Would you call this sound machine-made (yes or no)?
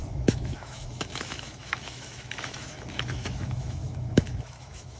yes